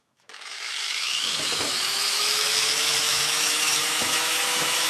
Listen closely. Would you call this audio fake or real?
fake